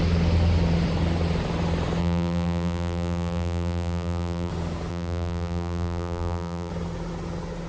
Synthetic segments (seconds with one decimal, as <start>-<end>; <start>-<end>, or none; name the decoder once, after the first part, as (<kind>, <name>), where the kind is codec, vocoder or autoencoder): 2.0-4.5 (vocoder, BigVGAN v2); 4.9-6.7

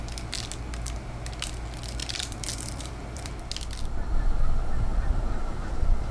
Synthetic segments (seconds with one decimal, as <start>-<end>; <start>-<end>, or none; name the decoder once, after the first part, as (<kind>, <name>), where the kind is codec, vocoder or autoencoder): 2.0-3.5 (vocoder, BigVGAN v2); 4.9-6.1

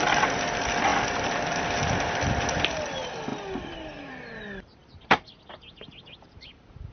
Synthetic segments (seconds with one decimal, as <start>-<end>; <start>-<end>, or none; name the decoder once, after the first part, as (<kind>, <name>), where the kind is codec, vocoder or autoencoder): 0.9-1.5 (vocoder, BigVGAN v2); 3.3-4.1

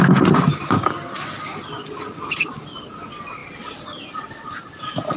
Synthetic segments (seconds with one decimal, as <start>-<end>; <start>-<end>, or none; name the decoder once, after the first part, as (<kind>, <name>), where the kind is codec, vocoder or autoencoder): 1.5-2.9 (vocoder, BigVGAN v2)

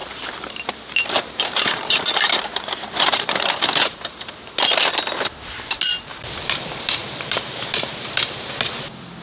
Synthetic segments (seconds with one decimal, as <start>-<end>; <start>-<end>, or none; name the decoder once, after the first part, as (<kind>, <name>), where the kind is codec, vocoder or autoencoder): 0.0-4.0 (vocoder, BigVGAN v2); 7.0-8.5